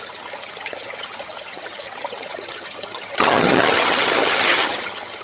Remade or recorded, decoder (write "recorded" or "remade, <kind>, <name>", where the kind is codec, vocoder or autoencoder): remade, vocoder, HiFi-GAN